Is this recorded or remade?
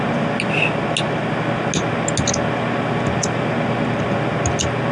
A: recorded